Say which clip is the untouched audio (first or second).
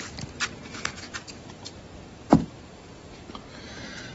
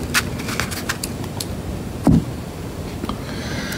second